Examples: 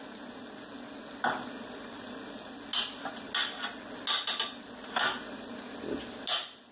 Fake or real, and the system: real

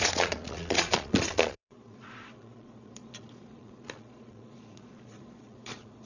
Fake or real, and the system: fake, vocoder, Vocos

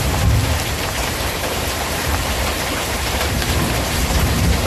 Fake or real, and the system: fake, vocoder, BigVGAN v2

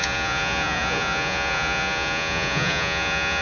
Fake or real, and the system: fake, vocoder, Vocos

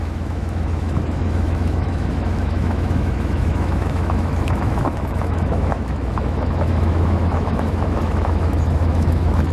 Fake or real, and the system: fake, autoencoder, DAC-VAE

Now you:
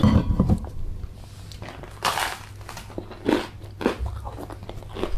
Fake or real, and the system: real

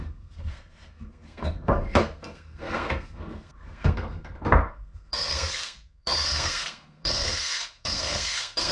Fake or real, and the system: fake, codec, SNAC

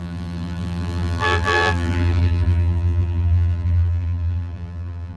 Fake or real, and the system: fake, vocoder, BigVGAN v2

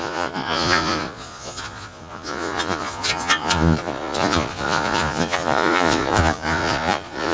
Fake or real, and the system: fake, vocoder, Vocos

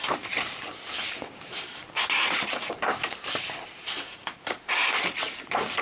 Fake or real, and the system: fake, vocoder, BigVGAN v2